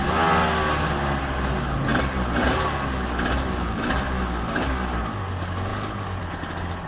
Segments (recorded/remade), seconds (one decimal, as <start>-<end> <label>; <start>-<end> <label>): 0.0-6.9 recorded